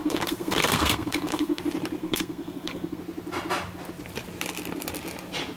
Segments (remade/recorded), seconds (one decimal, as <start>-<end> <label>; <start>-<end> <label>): 0.0-1.6 remade; 1.6-2.0 recorded; 2.0-3.0 remade; 3.0-5.6 recorded